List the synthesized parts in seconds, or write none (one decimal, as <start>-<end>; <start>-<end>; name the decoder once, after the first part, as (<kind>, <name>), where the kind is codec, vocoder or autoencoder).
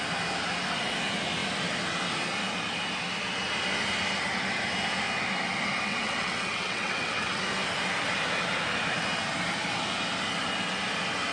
5.9-7.4 (vocoder, WaveNeXt)